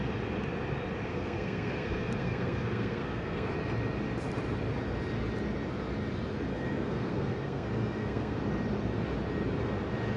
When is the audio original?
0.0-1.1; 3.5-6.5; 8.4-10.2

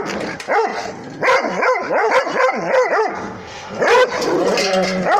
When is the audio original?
0.0-3.1; 3.8-5.2

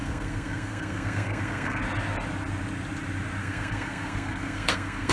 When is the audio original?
1.8-3.4

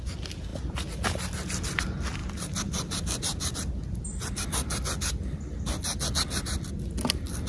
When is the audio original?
0.0-7.5